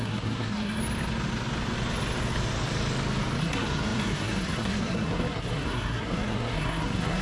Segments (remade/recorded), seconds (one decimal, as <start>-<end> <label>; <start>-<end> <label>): 0.0-0.8 remade; 0.8-3.4 recorded; 3.4-7.2 remade